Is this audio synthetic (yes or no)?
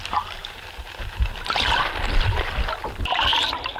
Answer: yes